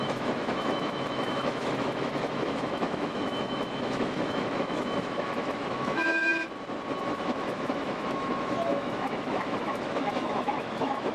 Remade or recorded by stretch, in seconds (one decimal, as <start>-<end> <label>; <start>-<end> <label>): 0.0-6.3 remade; 6.3-7.0 recorded; 7.0-11.1 remade